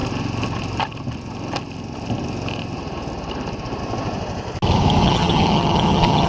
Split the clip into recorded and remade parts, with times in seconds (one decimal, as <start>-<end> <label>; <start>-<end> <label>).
0.0-5.0 recorded; 5.0-6.3 remade